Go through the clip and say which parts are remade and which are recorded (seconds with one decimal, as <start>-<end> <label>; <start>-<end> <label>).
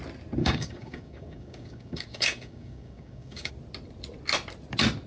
0.0-0.4 recorded; 0.4-3.5 remade; 3.5-5.1 recorded